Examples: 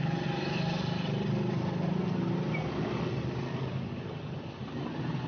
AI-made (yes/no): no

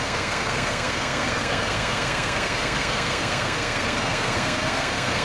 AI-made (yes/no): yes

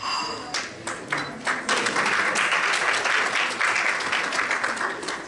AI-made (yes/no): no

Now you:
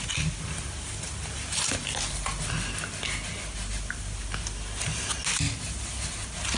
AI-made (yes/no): no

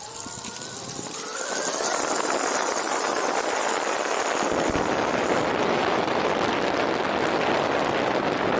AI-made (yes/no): no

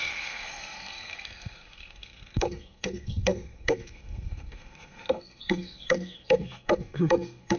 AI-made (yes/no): yes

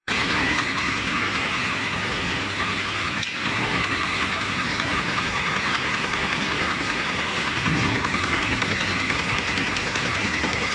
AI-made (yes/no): yes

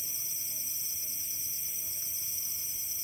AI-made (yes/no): no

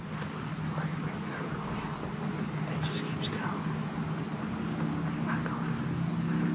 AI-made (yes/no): no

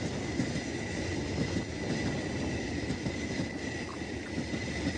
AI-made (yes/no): no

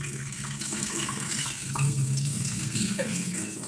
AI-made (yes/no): yes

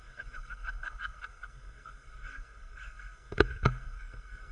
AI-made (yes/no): yes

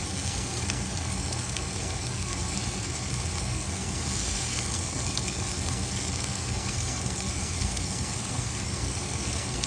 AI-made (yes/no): yes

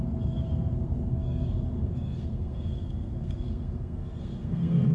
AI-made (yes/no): yes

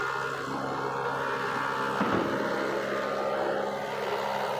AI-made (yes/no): no